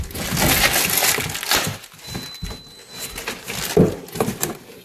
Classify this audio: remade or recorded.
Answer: recorded